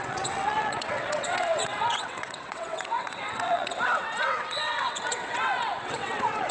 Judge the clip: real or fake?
fake